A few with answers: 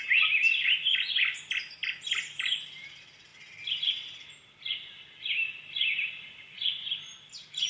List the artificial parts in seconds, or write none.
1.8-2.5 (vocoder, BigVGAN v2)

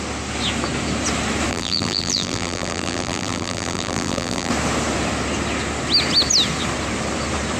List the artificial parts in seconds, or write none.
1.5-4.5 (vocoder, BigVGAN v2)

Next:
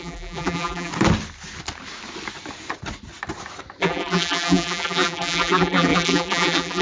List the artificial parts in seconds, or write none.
0.0-0.9 (vocoder, BigVGAN v2); 3.8-6.8

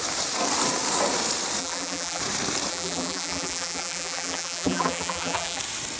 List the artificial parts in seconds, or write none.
1.6-2.2 (vocoder, BigVGAN v2); 2.7-5.6